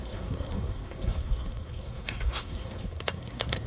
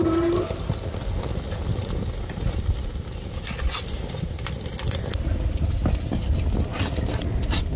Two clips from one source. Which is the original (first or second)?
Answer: second